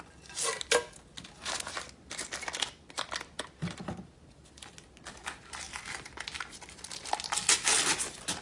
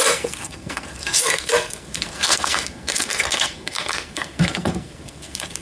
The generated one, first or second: second